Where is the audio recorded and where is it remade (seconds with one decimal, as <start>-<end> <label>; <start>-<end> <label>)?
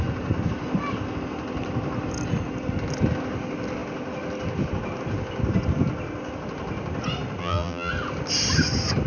0.0-7.4 recorded; 7.4-7.9 remade; 7.9-9.1 recorded